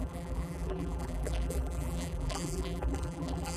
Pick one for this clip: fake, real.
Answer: fake